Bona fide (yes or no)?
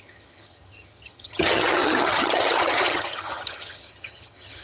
no